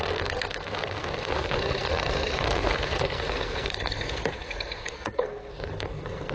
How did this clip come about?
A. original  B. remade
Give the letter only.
B